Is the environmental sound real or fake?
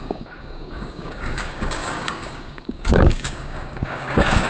fake